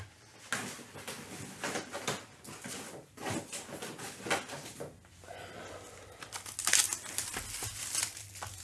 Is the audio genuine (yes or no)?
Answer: yes